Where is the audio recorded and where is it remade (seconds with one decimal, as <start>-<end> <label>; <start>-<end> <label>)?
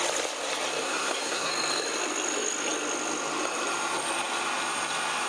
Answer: 0.0-0.8 recorded; 0.8-1.5 remade; 1.5-5.3 recorded